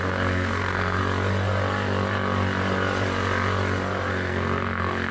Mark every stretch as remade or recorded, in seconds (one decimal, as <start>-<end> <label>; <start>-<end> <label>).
0.0-1.0 remade; 1.0-4.1 recorded; 4.1-5.1 remade